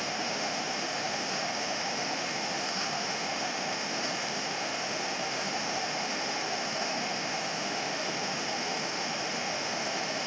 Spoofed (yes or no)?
yes